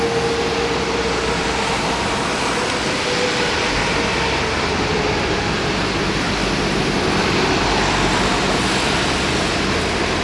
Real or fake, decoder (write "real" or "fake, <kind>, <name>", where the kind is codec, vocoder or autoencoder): real